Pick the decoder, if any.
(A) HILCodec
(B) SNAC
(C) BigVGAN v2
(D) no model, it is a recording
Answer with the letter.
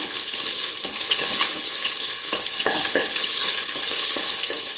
A